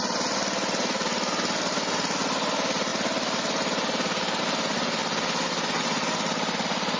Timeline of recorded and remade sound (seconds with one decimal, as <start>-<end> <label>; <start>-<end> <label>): 0.0-2.9 remade; 2.9-4.4 recorded; 4.4-5.0 remade; 5.0-5.8 recorded; 5.8-7.0 remade